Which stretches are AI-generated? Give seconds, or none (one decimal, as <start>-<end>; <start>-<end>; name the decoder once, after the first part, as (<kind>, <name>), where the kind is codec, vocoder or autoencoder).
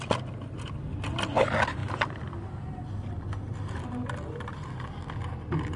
none